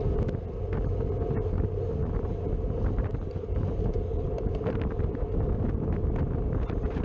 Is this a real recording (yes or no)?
yes